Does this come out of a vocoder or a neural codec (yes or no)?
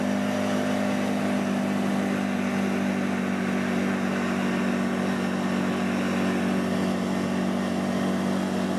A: no